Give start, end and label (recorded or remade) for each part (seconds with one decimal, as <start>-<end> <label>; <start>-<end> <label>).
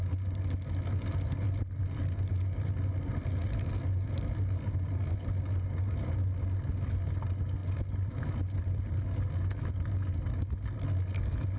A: 0.0-11.6 recorded